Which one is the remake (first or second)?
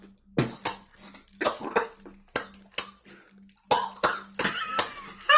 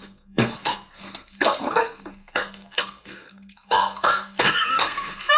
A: second